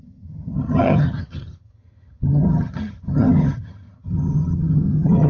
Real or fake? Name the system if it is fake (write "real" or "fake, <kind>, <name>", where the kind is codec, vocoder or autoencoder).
fake, vocoder, HiFi-GAN